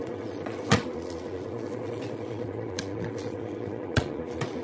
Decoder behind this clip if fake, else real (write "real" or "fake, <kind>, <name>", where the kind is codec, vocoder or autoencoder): fake, vocoder, Vocos